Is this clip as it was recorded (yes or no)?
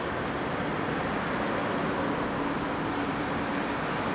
yes